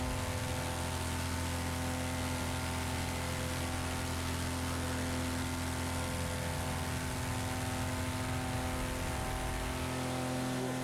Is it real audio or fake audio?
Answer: real